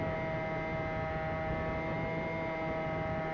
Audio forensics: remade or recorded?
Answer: recorded